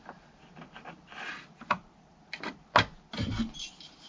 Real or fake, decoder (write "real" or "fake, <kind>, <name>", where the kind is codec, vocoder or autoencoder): real